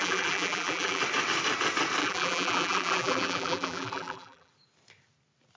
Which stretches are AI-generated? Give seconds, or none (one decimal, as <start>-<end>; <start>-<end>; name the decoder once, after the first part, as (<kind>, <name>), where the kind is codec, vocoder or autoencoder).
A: 0.0-1.0 (vocoder, BigVGAN v2); 2.0-4.5